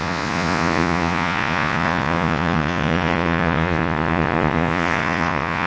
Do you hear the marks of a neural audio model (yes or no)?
yes